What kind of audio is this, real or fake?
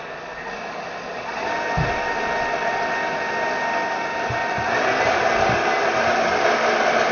real